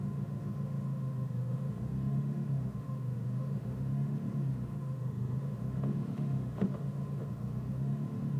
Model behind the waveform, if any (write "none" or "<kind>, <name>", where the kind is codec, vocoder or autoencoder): autoencoder, DAC-VAE